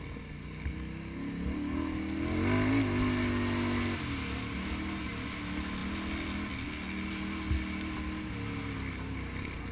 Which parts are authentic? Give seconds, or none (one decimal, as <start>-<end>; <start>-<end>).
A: 0.0-9.7